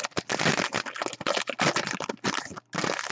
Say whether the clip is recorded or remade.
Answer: recorded